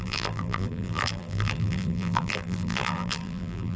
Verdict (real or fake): fake